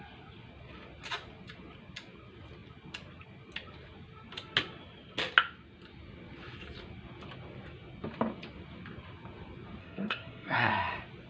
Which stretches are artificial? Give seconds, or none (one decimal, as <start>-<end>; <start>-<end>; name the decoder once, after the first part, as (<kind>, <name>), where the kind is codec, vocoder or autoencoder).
9.8-10.7 (codec, SNAC)